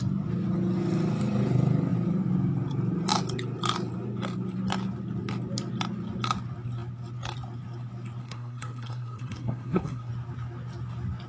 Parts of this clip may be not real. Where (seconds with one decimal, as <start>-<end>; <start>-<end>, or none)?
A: 8.2-10.1